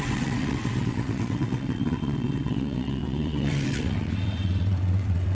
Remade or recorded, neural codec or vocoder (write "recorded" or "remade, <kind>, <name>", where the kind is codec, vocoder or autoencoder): remade, vocoder, WaveNeXt